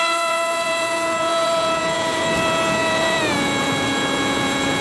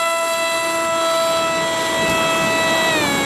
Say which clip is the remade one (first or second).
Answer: first